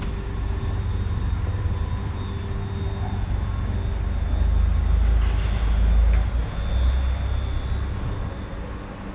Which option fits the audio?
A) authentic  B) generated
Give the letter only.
A